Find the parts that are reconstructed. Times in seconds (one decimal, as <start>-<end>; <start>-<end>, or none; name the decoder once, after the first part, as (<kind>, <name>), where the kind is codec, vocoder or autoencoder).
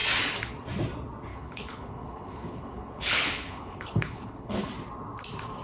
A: 1.3-4.7 (codec, HILCodec)